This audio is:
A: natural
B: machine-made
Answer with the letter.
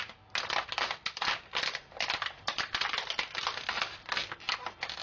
A